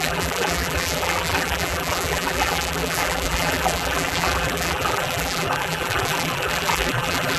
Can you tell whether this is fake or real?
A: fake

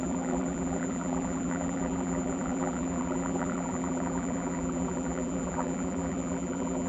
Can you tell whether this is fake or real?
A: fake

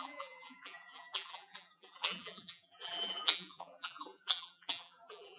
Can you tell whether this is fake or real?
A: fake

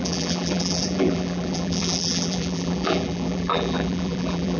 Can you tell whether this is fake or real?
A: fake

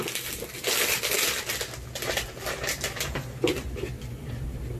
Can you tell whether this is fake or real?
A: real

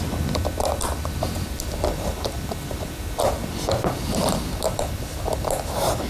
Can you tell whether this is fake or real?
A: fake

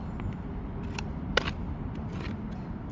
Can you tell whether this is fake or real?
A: fake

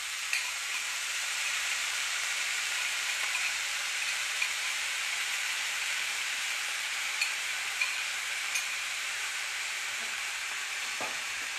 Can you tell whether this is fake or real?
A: fake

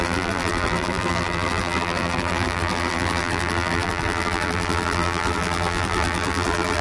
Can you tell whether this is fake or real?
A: fake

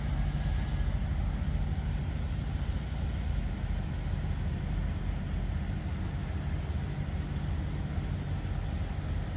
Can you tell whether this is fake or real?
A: real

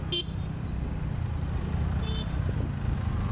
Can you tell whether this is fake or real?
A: real